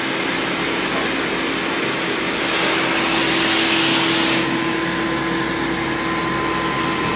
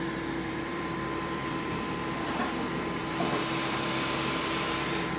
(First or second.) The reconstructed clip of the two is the second